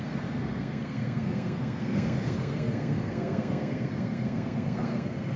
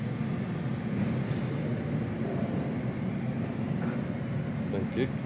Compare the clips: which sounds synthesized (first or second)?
first